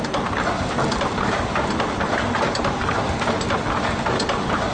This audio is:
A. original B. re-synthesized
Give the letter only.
A